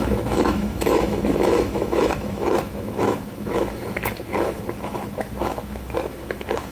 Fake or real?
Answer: fake